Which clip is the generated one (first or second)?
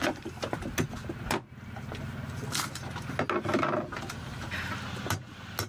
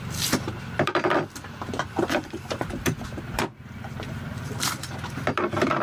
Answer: second